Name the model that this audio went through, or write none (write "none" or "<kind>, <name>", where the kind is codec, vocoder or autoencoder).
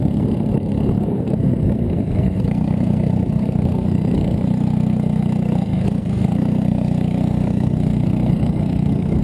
codec, SNAC